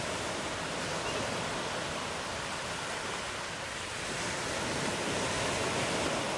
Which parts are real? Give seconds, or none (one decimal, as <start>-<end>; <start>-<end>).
none